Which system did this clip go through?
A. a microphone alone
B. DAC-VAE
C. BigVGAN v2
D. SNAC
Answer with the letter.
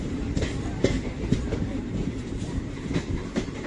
C